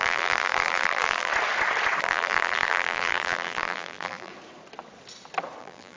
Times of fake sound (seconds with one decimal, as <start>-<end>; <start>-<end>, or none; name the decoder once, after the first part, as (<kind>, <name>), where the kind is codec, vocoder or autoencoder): 0.0-1.3 (vocoder, BigVGAN v2); 2.0-4.3; 5.6-6.0

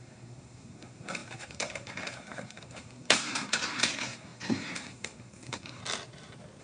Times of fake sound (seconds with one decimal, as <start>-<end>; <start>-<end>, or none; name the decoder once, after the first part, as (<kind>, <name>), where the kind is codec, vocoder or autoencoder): 0.0-5.8 (codec, SNAC)

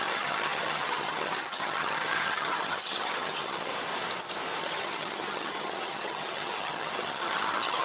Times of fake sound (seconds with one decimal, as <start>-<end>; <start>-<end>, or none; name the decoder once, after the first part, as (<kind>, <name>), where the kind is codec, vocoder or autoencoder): 0.0-3.7 (vocoder, HiFi-GAN); 4.6-7.8

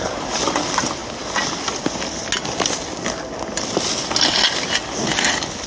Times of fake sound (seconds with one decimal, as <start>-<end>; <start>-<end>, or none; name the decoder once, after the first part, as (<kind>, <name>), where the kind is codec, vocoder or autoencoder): none

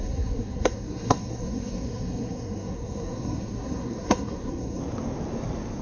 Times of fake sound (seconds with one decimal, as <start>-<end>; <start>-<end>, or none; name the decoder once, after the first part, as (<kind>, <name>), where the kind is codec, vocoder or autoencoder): 0.0-4.8 (codec, SNAC)